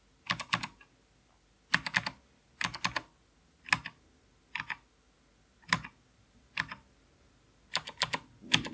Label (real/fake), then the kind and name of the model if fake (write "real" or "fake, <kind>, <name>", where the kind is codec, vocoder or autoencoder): real